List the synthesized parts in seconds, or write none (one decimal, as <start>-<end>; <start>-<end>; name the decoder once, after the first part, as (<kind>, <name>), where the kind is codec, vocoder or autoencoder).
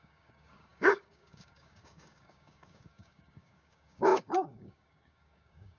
0.0-5.8 (codec, DAC)